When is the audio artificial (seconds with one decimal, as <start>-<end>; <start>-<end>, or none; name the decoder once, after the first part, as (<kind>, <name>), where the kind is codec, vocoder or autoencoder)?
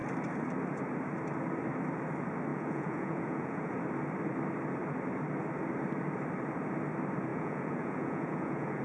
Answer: 2.5-3.7 (vocoder, Vocos); 7.3-8.8